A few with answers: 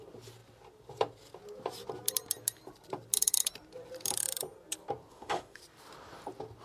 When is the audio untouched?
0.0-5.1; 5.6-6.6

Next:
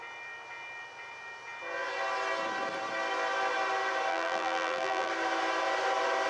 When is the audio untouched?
0.0-4.1; 5.1-6.3

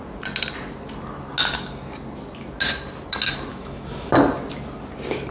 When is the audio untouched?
0.0-3.5; 4.1-5.3

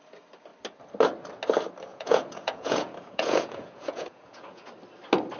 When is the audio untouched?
0.0-1.9; 4.7-5.4

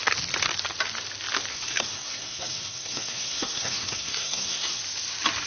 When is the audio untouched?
0.0-1.5; 4.8-5.5

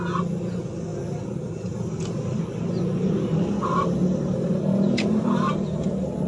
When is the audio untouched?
0.0-6.3

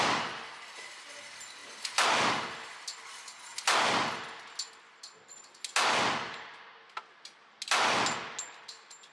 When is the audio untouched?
0.0-9.1